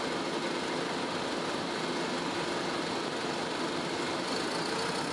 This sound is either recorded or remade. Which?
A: recorded